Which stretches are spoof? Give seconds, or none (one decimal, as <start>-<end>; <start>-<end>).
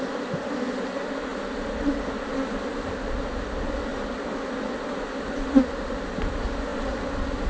none